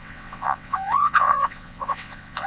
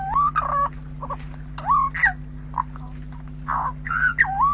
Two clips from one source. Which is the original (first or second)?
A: second